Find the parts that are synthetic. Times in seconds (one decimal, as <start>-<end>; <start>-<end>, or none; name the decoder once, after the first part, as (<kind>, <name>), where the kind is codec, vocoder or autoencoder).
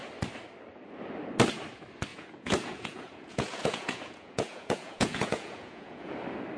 2.1-6.1 (vocoder, Vocos)